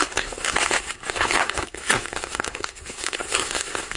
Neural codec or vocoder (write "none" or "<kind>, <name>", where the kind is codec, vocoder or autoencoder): codec, SNAC